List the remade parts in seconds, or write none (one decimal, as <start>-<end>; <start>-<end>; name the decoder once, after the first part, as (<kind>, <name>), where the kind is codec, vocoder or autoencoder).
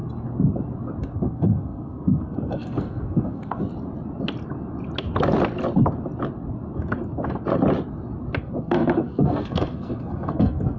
1.0-3.7 (codec, SNAC); 8.4-10.8